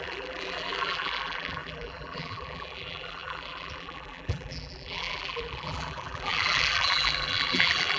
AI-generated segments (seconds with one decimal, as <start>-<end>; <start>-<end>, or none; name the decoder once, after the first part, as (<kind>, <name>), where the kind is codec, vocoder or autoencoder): 0.0-8.0 (vocoder, BigVGAN v2)